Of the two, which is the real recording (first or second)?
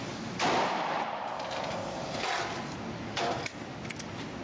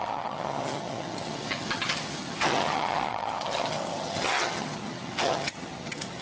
first